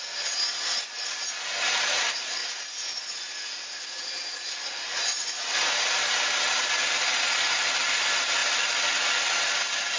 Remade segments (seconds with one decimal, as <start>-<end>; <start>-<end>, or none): none